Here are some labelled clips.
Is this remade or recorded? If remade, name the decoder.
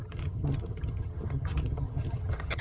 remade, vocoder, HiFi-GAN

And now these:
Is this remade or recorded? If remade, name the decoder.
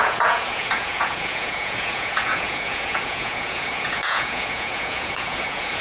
remade, vocoder, Vocos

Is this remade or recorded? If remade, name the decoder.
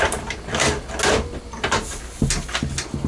recorded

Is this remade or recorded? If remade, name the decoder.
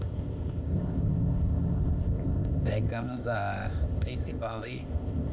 remade, codec, ZipCodec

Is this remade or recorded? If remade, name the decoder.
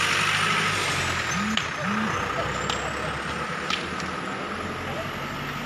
recorded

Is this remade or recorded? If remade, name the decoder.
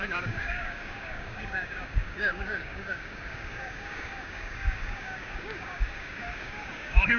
remade, codec, DAC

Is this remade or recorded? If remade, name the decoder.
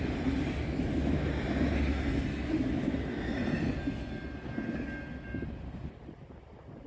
recorded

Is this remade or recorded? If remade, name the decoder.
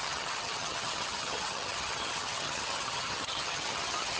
remade, vocoder, HiFi-GAN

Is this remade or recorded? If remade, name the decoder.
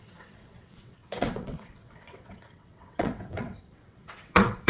remade, vocoder, WaveNeXt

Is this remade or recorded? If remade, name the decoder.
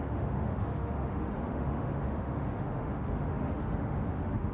remade, autoencoder, DAC-VAE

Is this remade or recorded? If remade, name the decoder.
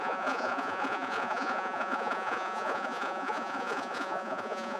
remade, vocoder, Vocos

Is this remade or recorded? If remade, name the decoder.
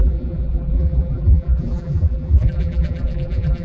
remade, vocoder, BigVGAN v2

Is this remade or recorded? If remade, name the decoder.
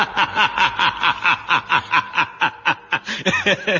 recorded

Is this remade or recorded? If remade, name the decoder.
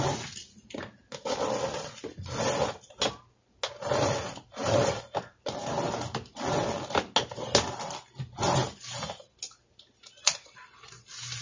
recorded